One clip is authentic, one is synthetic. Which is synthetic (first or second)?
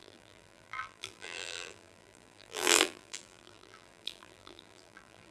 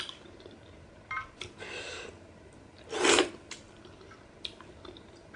first